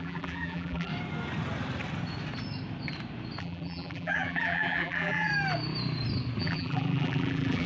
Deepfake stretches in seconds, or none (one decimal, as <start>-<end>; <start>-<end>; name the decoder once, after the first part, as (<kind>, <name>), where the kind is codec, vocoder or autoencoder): 0.0-0.9 (vocoder, BigVGAN v2); 3.4-5.3; 6.4-7.7